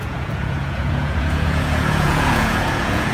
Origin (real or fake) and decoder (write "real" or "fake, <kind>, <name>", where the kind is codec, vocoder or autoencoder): fake, vocoder, Vocos